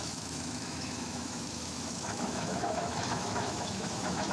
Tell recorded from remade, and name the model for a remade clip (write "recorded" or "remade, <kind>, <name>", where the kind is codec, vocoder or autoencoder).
remade, autoencoder, DAC-VAE